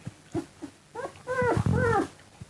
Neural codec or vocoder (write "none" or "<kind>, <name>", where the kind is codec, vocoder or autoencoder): none